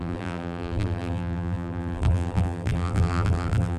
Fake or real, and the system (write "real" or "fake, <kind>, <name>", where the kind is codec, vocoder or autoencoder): fake, vocoder, BigVGAN v2